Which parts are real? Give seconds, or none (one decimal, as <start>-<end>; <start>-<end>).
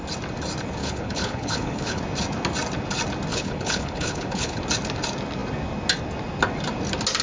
0.0-0.8; 2.0-3.3; 4.6-7.2